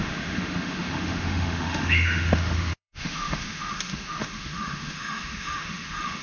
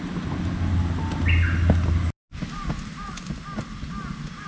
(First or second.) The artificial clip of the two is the first